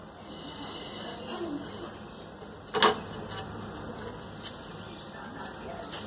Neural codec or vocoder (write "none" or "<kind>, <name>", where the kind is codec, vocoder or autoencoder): none